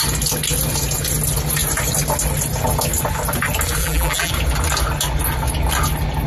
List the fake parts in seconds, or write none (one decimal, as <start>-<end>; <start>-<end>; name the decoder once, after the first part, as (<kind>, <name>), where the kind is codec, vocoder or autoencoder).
3.8-4.3 (vocoder, BigVGAN v2)